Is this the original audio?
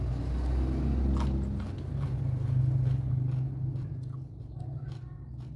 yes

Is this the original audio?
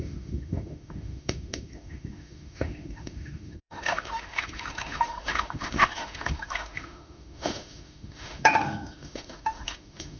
no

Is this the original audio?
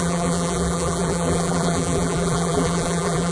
no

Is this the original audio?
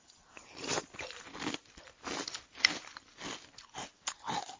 yes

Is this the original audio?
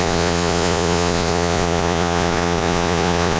no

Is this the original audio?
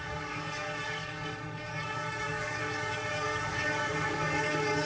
no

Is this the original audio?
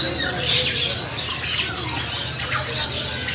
yes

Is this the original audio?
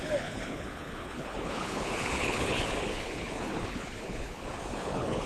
no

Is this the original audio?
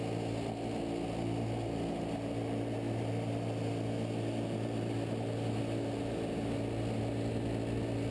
yes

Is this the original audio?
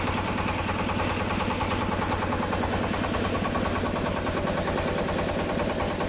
yes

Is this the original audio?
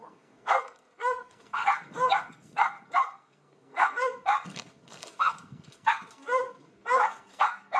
no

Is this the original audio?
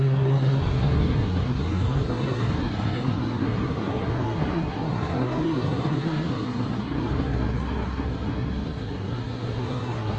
no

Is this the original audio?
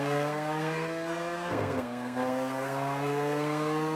no